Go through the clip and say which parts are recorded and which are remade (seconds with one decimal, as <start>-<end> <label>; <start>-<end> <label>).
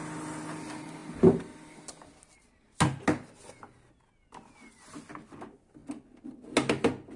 0.0-7.2 recorded